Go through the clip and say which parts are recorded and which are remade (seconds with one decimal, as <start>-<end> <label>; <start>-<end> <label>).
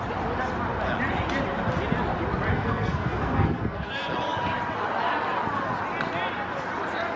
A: 0.0-2.5 recorded; 2.5-3.9 remade; 3.9-7.2 recorded